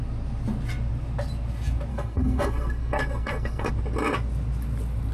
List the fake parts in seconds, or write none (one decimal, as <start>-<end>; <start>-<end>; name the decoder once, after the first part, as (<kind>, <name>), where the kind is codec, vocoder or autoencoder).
1.9-3.7 (codec, SNAC)